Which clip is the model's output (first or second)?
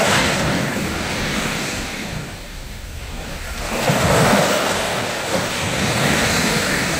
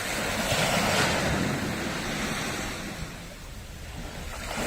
first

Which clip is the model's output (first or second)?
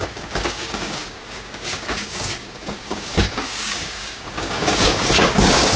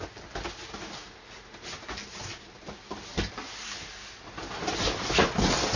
first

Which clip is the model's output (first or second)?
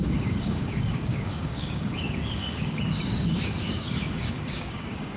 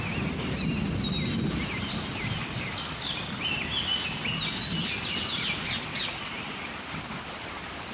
first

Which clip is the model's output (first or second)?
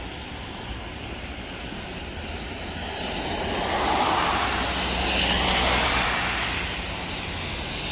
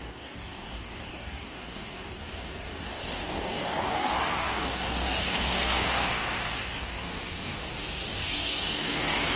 second